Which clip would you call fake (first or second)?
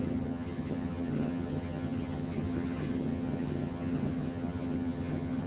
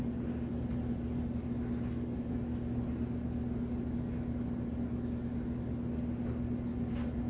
first